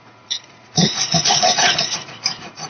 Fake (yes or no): yes